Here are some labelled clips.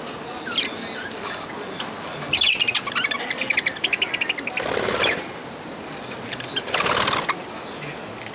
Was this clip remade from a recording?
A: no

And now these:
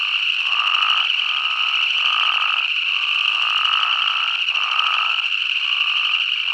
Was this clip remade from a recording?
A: no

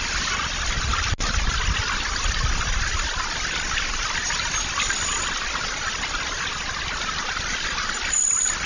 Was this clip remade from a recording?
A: no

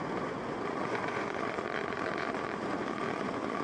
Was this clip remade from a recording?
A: yes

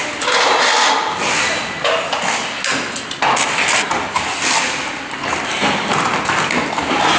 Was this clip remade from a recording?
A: no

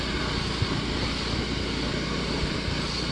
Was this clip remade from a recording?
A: no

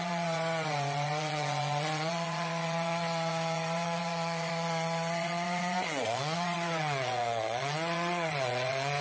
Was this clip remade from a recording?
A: yes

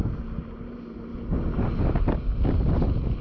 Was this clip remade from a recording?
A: no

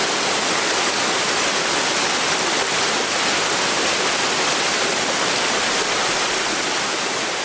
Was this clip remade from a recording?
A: no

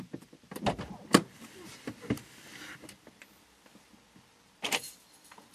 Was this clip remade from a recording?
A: no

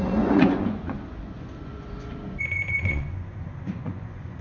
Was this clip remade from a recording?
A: yes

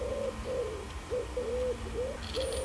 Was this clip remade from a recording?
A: no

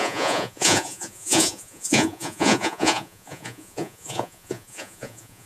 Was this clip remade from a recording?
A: yes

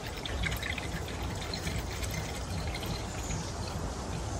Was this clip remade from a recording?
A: no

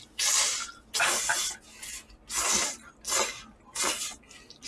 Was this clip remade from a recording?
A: no